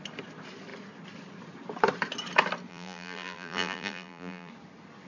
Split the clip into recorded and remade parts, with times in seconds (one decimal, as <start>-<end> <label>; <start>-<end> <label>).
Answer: 0.0-2.7 recorded; 2.7-4.5 remade; 4.5-5.1 recorded